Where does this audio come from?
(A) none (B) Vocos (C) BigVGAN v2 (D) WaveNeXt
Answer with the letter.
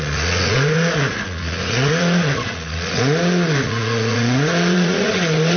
B